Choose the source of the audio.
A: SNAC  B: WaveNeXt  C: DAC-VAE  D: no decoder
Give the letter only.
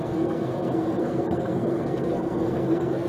A